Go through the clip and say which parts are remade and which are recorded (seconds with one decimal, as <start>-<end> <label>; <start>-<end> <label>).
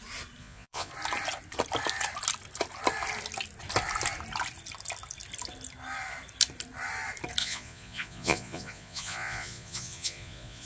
0.0-0.4 recorded; 0.4-0.9 remade; 0.9-7.4 recorded; 7.4-10.7 remade